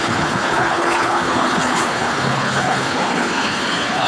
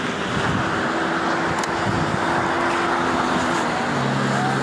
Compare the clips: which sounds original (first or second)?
second